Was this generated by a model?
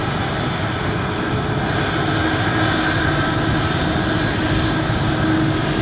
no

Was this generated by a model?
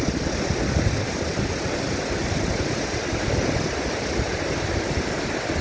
no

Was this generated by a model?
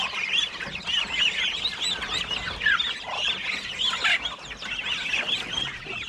no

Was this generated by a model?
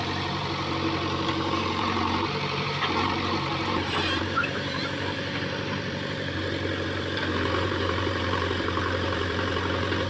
yes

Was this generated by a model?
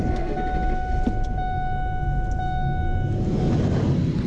no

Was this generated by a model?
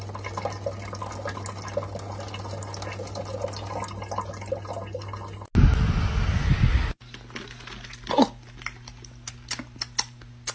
no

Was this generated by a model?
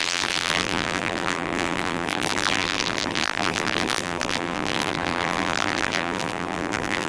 yes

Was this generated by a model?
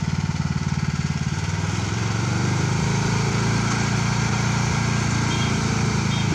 yes